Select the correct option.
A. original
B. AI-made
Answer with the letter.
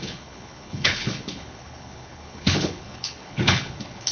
B